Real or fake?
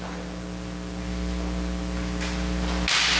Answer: real